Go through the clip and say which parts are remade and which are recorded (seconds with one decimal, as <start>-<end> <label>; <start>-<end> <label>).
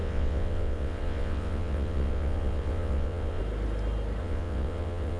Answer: 0.0-3.4 remade; 3.4-4.2 recorded; 4.2-5.2 remade